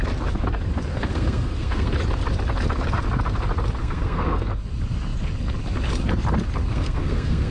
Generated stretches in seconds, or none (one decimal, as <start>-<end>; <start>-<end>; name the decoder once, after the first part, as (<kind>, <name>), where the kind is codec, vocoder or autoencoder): 0.9-1.9 (codec, SNAC); 3.8-4.5; 6.7-7.5